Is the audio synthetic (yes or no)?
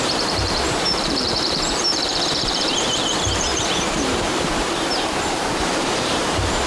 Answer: yes